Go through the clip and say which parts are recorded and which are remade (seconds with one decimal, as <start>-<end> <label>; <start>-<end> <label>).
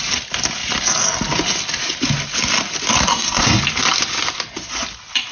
0.0-3.1 recorded; 3.1-3.6 remade; 3.6-5.3 recorded